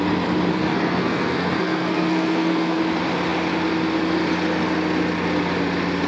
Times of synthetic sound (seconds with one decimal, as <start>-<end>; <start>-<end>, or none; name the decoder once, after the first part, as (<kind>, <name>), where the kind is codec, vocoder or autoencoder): 0.5-2.8 (codec, SNAC)